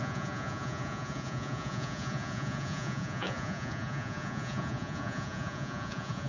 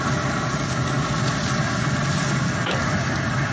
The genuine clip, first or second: second